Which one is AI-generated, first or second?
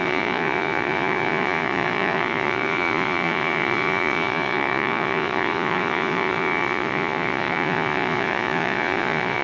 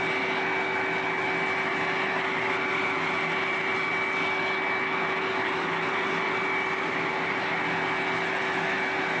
first